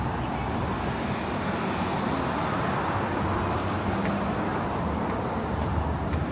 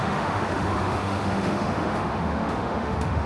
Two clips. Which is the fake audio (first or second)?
second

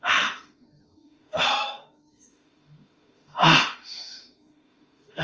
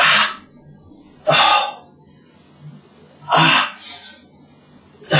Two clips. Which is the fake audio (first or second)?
first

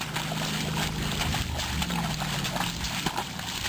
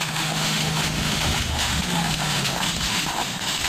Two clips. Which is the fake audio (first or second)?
second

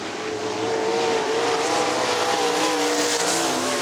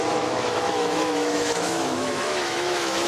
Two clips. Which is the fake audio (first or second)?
second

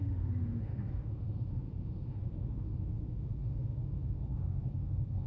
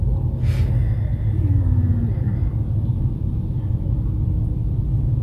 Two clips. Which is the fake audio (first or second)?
first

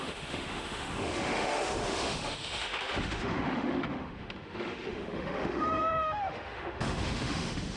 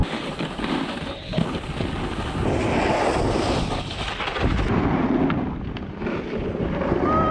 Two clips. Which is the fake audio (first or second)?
first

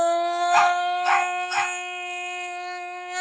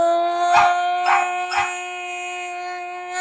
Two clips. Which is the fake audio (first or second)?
first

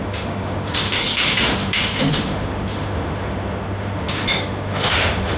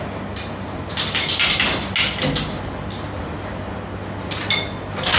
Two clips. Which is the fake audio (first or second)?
first